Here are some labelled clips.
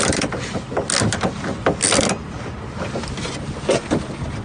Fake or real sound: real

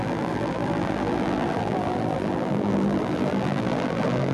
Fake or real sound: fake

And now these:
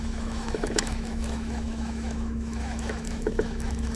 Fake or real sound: fake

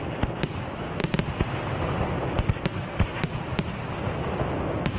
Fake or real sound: real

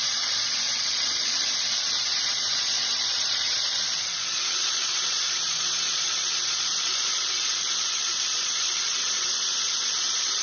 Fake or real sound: fake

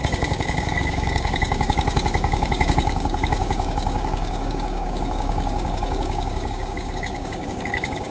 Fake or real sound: fake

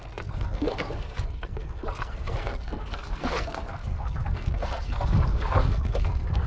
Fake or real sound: fake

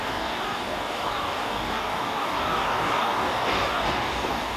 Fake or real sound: fake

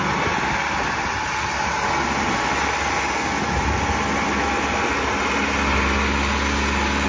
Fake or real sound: real